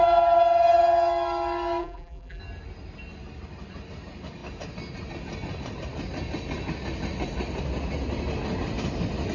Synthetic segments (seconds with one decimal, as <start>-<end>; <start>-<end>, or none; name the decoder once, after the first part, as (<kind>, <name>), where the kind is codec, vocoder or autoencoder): 1.8-2.4 (vocoder, BigVGAN v2)